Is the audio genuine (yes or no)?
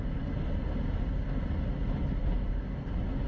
yes